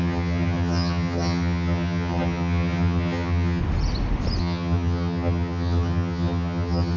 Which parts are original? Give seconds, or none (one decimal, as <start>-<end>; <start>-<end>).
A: 3.6-4.4